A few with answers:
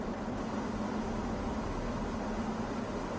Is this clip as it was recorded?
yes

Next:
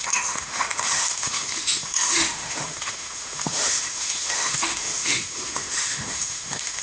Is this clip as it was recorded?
no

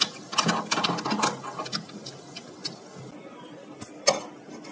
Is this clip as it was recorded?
yes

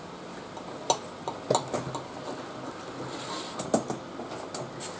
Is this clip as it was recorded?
yes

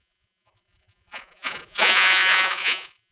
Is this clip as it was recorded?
no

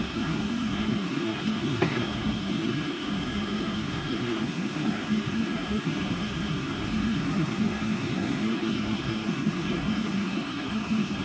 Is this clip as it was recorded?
no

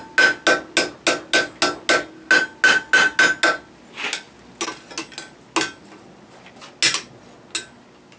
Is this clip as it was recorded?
yes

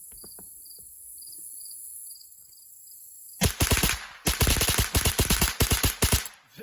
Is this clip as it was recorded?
yes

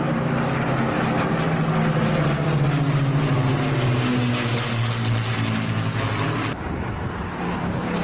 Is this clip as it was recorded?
yes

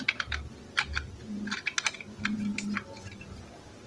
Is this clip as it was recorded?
yes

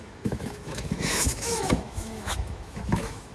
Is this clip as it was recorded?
no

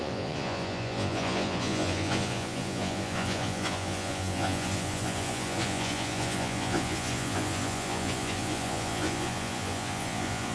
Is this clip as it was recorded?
no